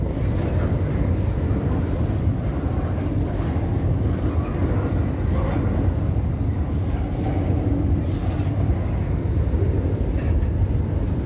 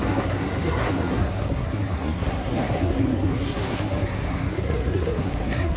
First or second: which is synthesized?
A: second